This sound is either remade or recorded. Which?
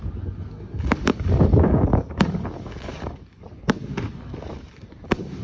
remade